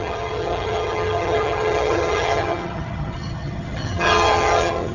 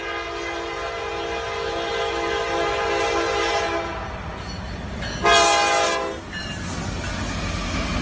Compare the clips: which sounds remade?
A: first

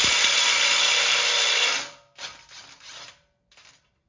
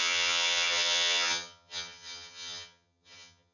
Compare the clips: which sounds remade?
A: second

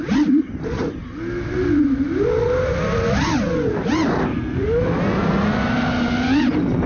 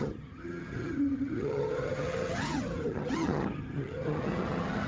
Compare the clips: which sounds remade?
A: second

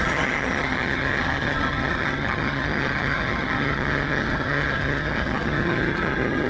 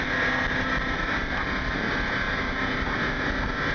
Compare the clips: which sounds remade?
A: first